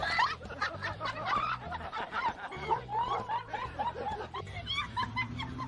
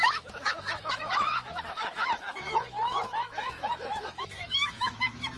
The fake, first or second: second